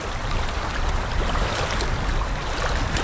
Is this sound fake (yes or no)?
no